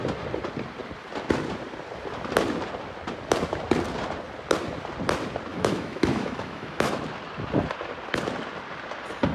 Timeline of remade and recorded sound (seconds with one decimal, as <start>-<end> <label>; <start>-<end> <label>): 0.0-5.5 recorded; 5.5-6.9 remade; 6.9-9.3 recorded